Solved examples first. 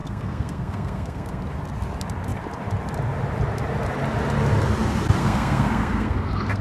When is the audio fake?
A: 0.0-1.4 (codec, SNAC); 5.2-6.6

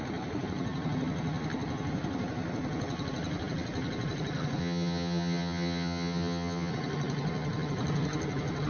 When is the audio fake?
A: 4.6-6.7 (vocoder, HiFi-GAN)

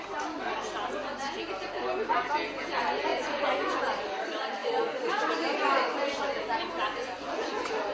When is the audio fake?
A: 3.1-3.8 (vocoder, Vocos); 4.6-5.1; 6.9-7.9

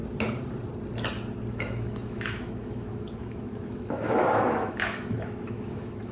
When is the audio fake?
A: 1.5-6.1 (autoencoder, DAC-VAE)

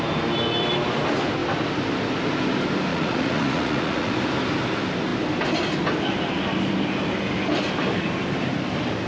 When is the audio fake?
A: 2.9-4.1 (vocoder, Vocos)

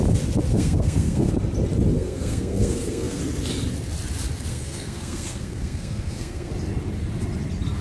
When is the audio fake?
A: 0.5-1.3 (codec, SNAC); 1.9-3.2; 4.5-6.5